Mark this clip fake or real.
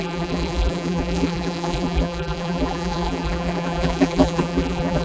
fake